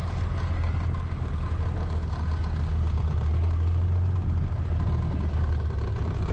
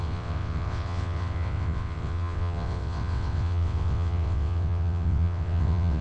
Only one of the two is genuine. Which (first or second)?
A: first